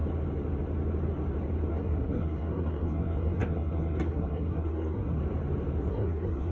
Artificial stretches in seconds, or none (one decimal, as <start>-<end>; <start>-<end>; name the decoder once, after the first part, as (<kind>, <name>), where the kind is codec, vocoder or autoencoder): 1.7-5.2 (codec, SNAC); 5.9-6.5